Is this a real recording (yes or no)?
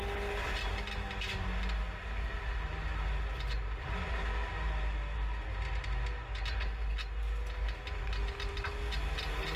yes